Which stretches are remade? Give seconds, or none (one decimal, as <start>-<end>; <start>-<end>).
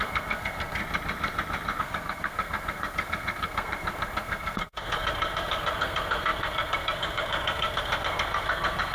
0.0-0.8; 1.8-8.9